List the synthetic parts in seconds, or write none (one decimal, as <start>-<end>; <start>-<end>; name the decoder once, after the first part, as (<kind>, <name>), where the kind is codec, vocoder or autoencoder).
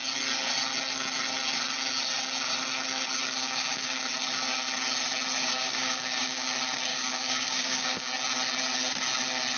3.4-4.0 (codec, DAC); 5.4-6.5; 6.9-8.1